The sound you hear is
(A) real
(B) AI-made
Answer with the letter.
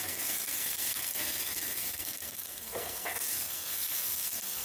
B